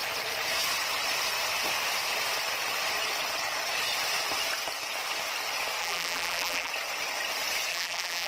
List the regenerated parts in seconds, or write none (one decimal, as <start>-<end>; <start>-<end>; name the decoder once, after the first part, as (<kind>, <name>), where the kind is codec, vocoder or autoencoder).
5.8-6.7 (vocoder, BigVGAN v2); 7.7-8.3